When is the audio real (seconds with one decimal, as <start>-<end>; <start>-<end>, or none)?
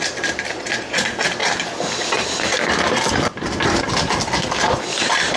0.0-5.4